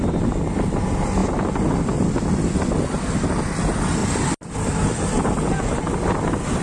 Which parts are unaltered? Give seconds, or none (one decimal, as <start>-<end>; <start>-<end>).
0.0-4.0; 5.8-6.6